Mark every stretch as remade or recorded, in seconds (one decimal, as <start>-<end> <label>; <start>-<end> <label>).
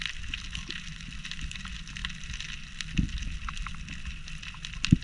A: 0.0-5.0 recorded